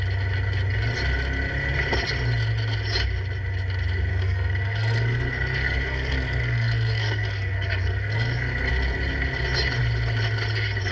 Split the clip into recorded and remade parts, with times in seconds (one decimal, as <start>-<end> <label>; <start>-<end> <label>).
0.0-4.1 recorded; 4.1-8.7 remade; 8.7-10.9 recorded

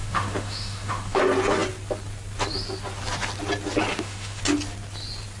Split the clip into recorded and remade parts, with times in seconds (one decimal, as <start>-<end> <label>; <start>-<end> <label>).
0.0-1.2 remade; 1.2-3.9 recorded; 3.9-4.4 remade; 4.4-5.4 recorded

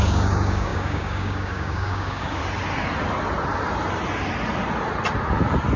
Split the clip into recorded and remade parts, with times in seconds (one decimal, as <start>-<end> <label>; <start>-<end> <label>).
0.0-2.4 remade; 2.4-5.8 recorded

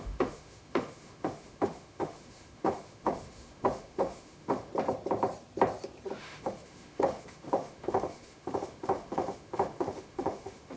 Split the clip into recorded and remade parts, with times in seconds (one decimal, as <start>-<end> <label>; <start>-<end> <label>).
0.0-4.7 remade; 4.7-6.2 recorded; 6.2-10.8 remade